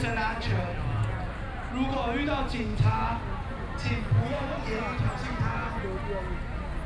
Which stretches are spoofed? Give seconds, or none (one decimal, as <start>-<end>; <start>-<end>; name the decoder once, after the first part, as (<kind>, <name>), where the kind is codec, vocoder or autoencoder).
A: none